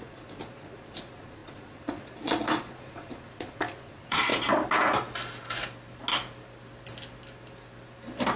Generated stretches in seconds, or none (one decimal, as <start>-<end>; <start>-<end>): 0.0-4.3